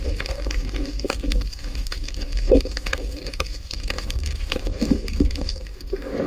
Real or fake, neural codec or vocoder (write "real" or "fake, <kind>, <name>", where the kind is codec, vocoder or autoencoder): fake, codec, DAC